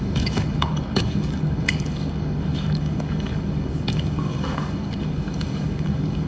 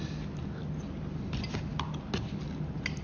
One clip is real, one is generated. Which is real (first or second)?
second